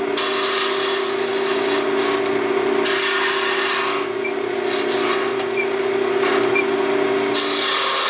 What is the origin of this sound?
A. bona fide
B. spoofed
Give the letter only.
A